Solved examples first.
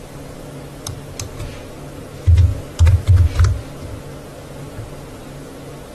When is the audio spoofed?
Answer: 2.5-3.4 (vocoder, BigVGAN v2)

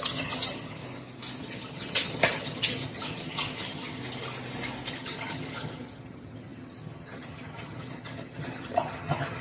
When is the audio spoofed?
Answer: 0.0-0.8 (vocoder, HiFi-GAN); 1.4-4.0; 4.9-9.4

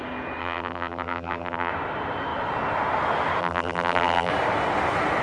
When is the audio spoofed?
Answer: 0.4-1.7 (vocoder, BigVGAN v2); 3.4-4.3

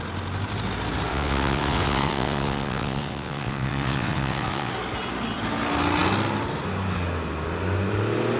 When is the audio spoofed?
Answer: 1.1-4.7 (vocoder, WaveNeXt)